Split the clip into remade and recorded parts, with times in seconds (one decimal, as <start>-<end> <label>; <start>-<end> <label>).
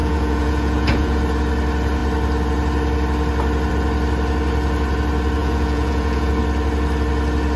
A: 0.0-1.2 remade; 1.2-5.4 recorded; 5.4-6.3 remade; 6.3-7.6 recorded